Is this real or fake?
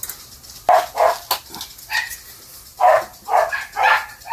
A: real